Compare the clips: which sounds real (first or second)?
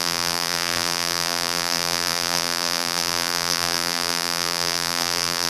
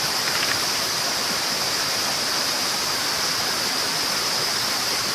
second